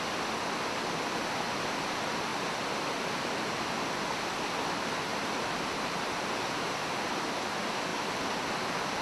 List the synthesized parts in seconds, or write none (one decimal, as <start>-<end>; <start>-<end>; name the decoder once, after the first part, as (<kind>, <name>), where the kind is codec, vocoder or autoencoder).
5.1-6.8 (vocoder, BigVGAN v2)